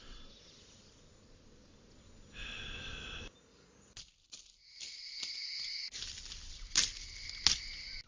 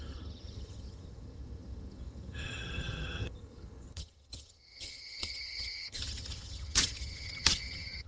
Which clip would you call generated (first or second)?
second